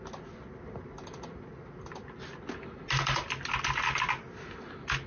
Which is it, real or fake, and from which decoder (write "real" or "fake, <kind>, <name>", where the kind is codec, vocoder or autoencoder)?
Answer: real